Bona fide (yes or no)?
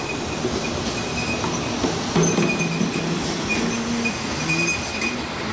yes